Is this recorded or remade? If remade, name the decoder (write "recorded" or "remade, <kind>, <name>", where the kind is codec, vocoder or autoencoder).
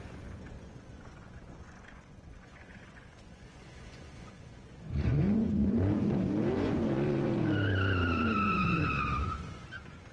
remade, vocoder, Vocos